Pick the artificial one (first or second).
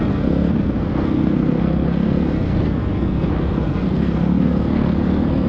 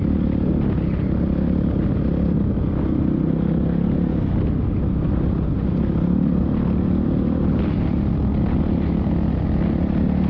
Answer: first